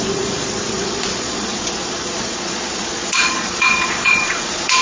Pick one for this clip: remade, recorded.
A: remade